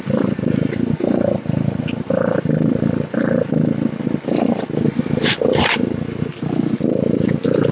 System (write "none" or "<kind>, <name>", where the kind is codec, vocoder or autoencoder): none